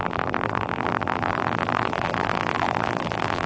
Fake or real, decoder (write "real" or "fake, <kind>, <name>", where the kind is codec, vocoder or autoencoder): fake, vocoder, BigVGAN v2